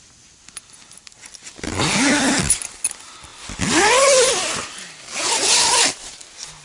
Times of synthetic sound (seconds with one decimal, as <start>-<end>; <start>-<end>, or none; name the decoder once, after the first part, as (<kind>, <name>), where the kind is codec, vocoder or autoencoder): none